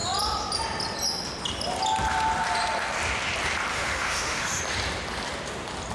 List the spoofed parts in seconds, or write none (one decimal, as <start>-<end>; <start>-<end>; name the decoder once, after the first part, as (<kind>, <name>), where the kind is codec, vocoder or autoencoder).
3.7-4.6 (autoencoder, DAC-VAE)